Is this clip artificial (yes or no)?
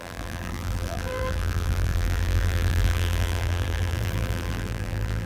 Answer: yes